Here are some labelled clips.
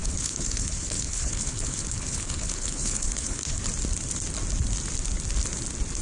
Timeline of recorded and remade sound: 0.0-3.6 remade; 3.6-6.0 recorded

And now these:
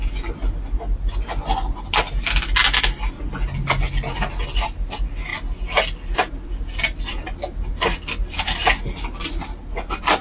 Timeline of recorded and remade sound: 0.0-10.2 recorded

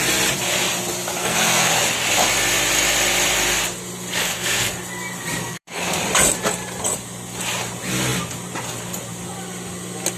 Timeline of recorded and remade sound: 0.0-1.2 recorded; 1.2-1.7 remade; 1.7-4.2 recorded; 4.2-4.7 remade; 4.7-5.4 recorded; 5.4-6.0 remade; 6.0-10.2 recorded

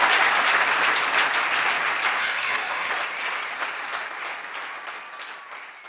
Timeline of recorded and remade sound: 0.0-2.2 recorded; 2.2-2.9 remade; 2.9-5.9 recorded

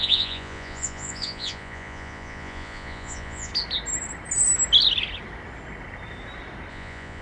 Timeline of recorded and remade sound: 0.0-3.5 remade; 3.5-6.7 recorded; 6.7-7.2 remade

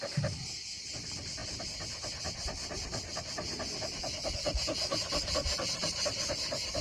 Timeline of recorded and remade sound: 0.0-1.4 recorded; 1.4-3.2 remade; 3.2-4.8 recorded; 4.8-6.3 remade; 6.3-6.8 recorded

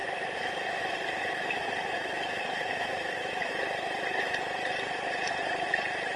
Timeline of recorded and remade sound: 0.0-3.5 remade; 3.5-6.2 recorded

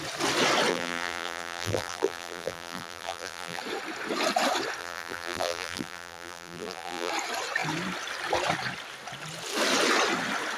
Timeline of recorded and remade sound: 0.0-0.7 recorded; 0.7-3.6 remade; 3.6-4.8 recorded; 4.8-7.1 remade; 7.1-10.6 recorded